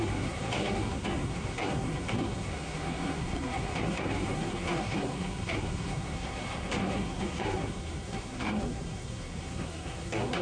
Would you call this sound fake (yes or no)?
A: yes